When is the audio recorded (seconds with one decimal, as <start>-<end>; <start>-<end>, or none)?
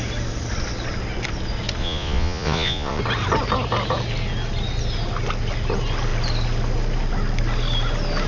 0.0-1.8; 3.0-8.3